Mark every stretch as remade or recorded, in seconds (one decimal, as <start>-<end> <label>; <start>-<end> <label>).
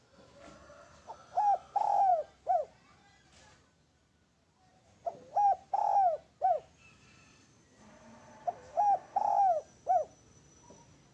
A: 0.0-11.1 recorded